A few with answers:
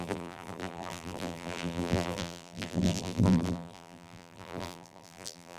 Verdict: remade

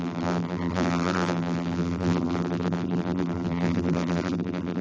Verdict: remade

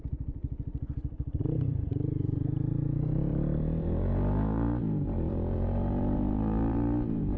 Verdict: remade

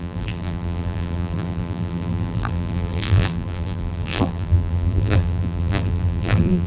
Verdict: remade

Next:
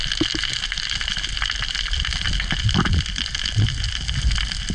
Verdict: recorded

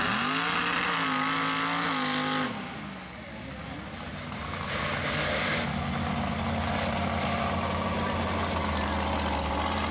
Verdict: recorded